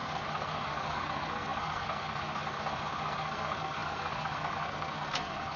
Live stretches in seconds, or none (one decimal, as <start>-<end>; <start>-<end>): none